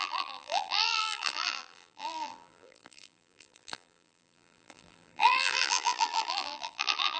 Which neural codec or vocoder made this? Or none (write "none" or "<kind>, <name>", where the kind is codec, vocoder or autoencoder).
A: vocoder, BigVGAN v2